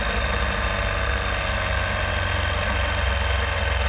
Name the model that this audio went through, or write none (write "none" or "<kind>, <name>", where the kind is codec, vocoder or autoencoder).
none